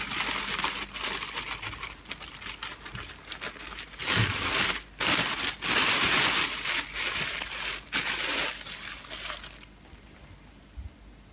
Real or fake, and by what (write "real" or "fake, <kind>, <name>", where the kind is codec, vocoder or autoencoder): real